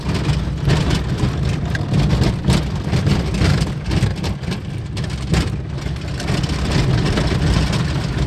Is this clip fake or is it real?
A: real